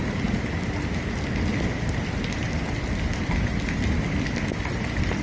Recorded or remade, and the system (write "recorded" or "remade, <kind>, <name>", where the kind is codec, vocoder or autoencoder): recorded